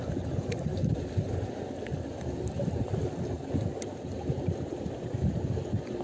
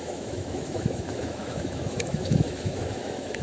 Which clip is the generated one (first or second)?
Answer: second